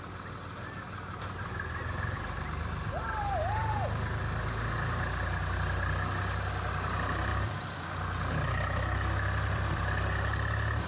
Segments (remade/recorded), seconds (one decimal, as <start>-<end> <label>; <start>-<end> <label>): 0.0-7.3 recorded; 7.3-9.8 remade; 9.8-10.9 recorded